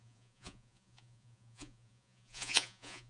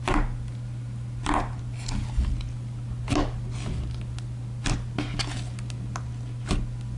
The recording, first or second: second